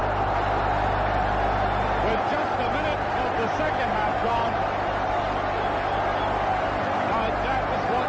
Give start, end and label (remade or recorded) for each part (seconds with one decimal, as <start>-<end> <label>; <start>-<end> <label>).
0.0-8.1 recorded

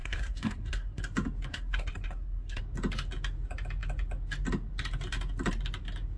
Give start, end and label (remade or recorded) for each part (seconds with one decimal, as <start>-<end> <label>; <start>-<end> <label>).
0.0-1.0 remade; 1.0-1.5 recorded; 1.5-2.6 remade; 2.6-6.2 recorded

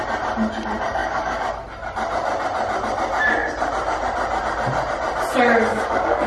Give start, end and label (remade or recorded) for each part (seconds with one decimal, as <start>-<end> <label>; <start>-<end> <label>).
0.0-1.0 recorded; 1.0-1.5 remade; 1.5-5.7 recorded; 5.7-6.3 remade

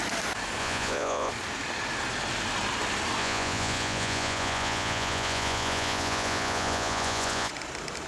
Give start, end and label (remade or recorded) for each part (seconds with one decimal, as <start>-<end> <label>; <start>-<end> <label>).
0.0-0.6 recorded; 0.6-1.3 remade; 1.3-3.2 recorded; 3.2-7.5 remade; 7.5-8.1 recorded

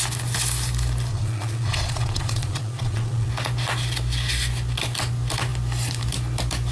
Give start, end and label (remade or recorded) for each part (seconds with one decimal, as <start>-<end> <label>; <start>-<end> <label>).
0.0-1.1 recorded; 1.1-3.3 remade; 3.3-6.7 recorded

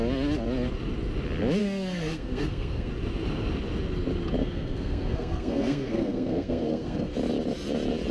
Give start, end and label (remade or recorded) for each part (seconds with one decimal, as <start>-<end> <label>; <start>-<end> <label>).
0.0-1.6 recorded; 1.6-2.9 remade; 2.9-4.4 recorded; 4.4-7.1 remade; 7.1-8.1 recorded